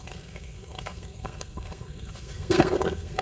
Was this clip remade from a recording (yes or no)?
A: yes